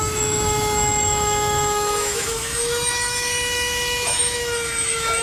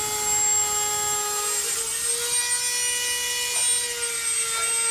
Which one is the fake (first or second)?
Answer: first